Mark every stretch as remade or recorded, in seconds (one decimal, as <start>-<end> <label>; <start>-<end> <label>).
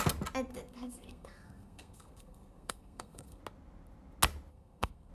0.0-0.5 recorded; 0.5-3.4 remade; 3.4-4.5 recorded; 4.5-5.1 remade